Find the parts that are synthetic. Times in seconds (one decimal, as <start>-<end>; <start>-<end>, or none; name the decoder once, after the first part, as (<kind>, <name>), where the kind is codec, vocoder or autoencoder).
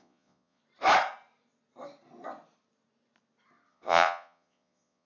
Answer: 0.0-0.6 (vocoder, Vocos); 3.7-5.1